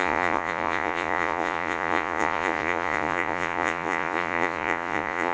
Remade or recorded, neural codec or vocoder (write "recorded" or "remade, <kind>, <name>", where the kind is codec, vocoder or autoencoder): remade, vocoder, Vocos